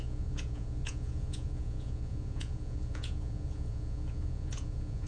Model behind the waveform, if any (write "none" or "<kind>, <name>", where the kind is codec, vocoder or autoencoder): vocoder, Vocos